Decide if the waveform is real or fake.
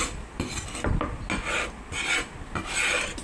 real